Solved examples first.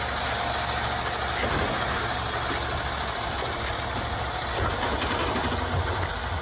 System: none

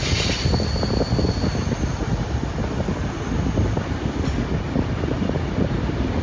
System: none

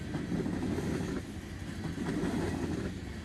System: none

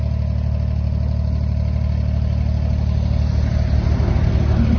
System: none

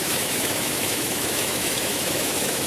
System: autoencoder, DAC-VAE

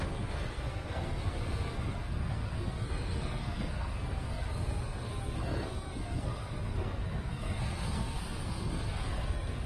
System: codec, SNAC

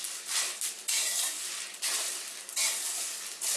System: none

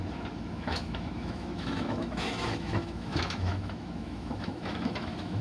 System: autoencoder, DAC-VAE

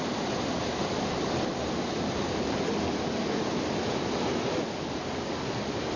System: none